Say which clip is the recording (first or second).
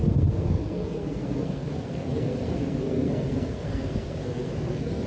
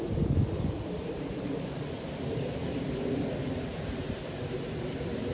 second